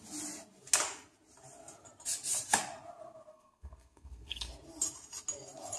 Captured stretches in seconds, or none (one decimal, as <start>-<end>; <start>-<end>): 0.0-3.3; 4.5-5.8